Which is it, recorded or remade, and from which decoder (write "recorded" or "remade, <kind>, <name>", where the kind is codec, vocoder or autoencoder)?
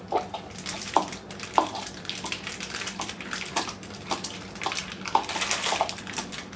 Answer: recorded